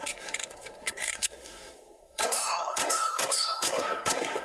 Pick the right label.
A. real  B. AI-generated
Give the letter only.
B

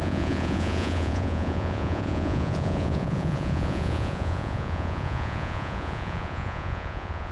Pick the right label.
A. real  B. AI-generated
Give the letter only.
B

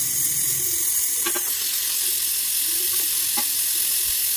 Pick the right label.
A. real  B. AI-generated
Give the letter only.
A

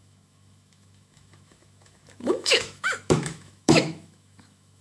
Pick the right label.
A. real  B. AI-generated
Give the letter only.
B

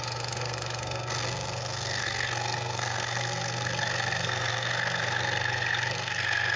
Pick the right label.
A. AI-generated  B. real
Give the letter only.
A